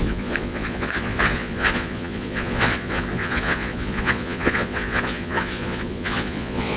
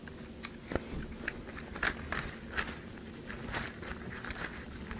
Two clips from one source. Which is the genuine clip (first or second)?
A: second